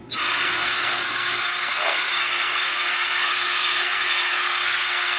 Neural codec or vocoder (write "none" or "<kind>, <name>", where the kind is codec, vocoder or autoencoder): codec, SNAC